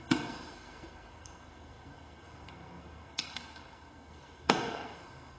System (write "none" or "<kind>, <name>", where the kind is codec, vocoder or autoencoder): codec, SNAC